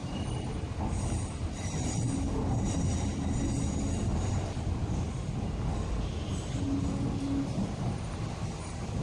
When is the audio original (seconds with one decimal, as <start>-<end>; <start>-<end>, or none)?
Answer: 0.0-9.0